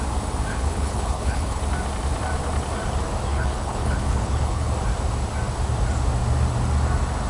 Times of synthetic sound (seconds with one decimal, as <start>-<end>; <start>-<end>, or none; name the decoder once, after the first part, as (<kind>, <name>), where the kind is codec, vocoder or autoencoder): 0.5-1.6 (codec, HILCodec); 3.3-4.7